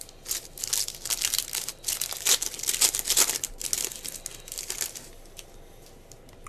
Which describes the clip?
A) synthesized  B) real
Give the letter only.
B